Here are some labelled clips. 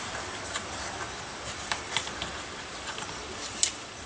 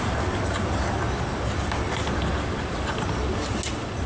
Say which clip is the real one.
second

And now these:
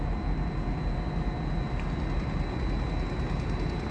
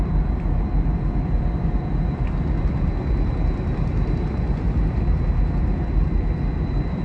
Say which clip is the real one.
first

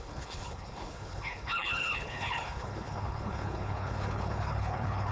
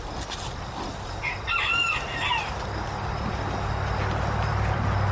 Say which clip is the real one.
second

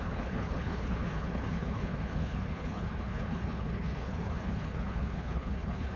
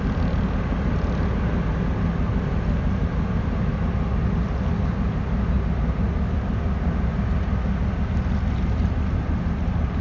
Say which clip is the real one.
second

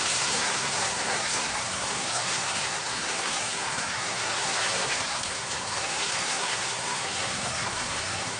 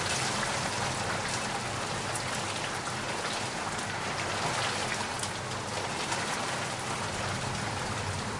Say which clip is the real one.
second